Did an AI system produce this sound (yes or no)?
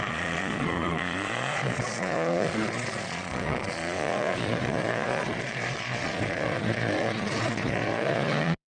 yes